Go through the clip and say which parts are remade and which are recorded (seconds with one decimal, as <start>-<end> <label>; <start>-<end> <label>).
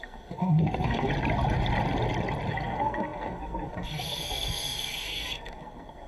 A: 0.0-1.1 remade; 1.1-2.5 recorded; 2.5-6.1 remade